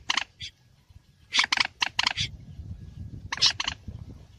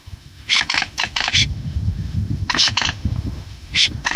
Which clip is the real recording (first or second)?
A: first